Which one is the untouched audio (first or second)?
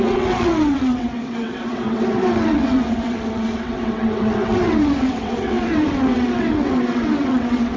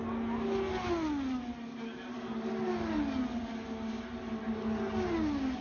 second